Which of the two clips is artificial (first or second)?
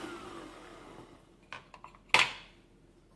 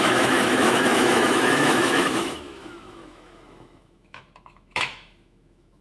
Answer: second